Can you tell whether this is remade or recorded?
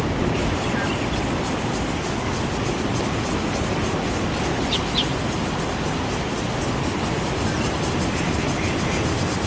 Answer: recorded